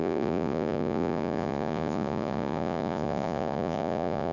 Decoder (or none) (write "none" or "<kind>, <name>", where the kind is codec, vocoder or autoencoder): vocoder, Vocos